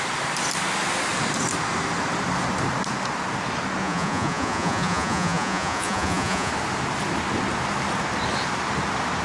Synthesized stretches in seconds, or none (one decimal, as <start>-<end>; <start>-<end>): 3.8-6.5